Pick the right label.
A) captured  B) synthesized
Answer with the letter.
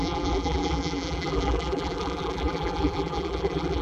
B